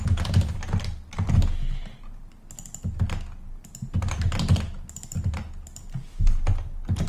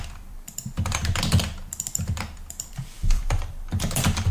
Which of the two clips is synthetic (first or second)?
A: second